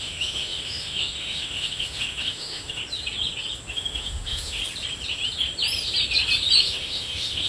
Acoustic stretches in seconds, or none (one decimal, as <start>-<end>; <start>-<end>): 2.8-3.7; 4.6-6.6